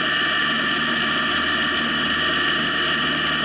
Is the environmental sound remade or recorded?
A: recorded